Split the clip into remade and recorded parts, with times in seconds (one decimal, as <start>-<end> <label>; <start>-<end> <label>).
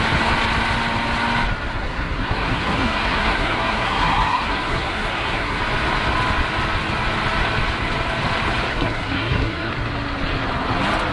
0.0-1.7 recorded; 1.7-5.6 remade; 5.6-8.7 recorded; 8.7-9.7 remade; 9.7-11.1 recorded